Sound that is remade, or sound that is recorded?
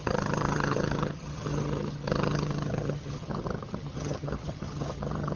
remade